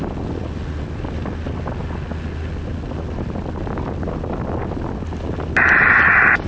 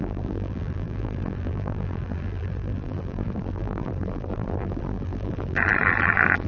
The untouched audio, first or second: first